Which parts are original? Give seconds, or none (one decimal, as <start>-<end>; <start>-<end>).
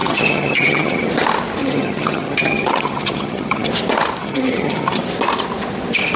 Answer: 1.1-1.6; 3.7-4.2; 5.0-6.2